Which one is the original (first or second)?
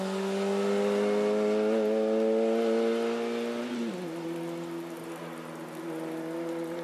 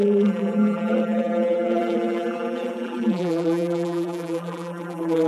first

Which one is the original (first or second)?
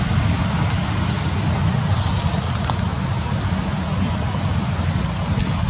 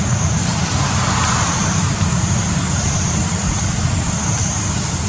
first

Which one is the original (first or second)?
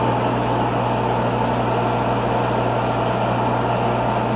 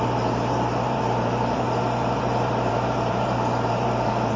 first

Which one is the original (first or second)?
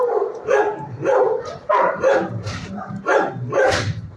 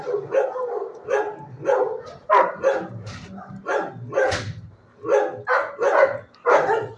second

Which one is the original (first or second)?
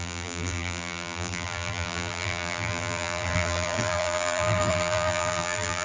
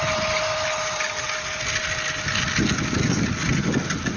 second